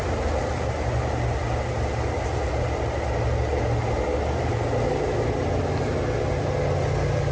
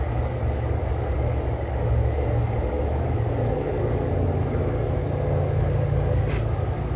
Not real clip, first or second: second